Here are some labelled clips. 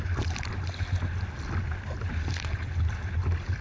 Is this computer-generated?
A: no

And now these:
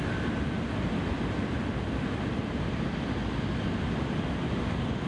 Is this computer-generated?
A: no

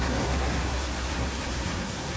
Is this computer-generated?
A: yes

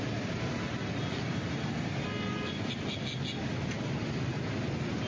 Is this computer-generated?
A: no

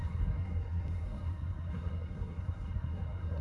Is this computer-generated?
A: yes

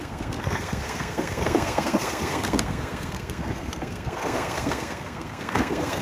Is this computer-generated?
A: yes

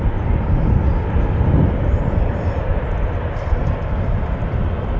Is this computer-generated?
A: no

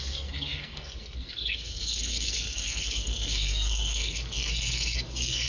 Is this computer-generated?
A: yes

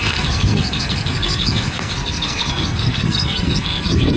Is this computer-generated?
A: yes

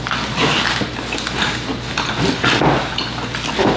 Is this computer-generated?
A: no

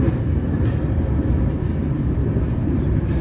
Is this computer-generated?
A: no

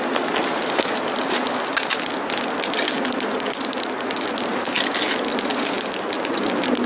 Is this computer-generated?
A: no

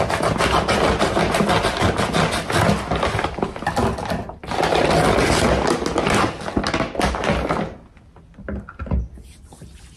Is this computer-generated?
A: no